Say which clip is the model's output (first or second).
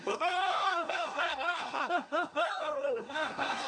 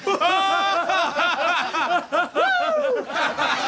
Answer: first